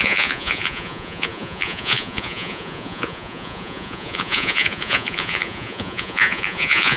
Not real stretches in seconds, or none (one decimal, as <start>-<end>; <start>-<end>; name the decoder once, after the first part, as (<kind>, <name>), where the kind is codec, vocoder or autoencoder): 0.0-7.0 (vocoder, Vocos)